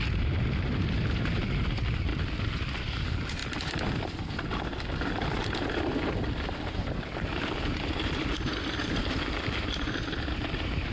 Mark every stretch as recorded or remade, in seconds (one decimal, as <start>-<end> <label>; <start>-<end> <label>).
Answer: 0.0-2.1 remade; 2.1-2.9 recorded; 2.9-3.4 remade; 3.4-6.6 recorded; 6.6-10.9 remade